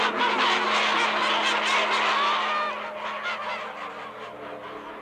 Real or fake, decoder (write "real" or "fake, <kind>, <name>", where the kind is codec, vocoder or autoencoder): real